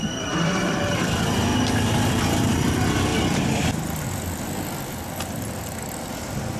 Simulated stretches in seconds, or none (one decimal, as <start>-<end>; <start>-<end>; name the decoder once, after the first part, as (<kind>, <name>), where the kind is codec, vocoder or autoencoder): 0.0-1.5 (vocoder, BigVGAN v2); 2.1-3.1; 4.9-6.6